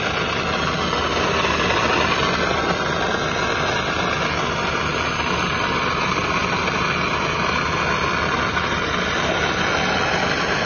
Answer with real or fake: real